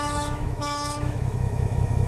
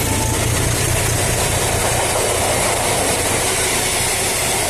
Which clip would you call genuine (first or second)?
second